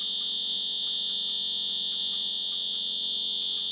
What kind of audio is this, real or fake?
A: real